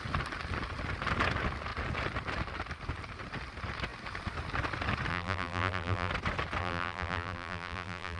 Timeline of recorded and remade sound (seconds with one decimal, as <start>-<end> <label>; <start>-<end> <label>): 0.0-5.1 recorded; 5.1-6.1 remade; 6.1-6.6 recorded; 6.6-8.2 remade